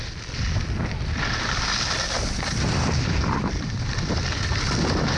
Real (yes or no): yes